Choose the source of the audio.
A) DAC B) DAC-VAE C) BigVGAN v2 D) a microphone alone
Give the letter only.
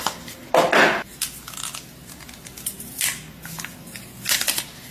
D